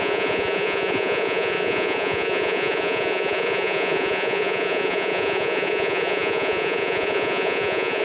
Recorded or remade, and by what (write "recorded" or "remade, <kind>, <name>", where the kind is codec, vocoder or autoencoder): remade, vocoder, Vocos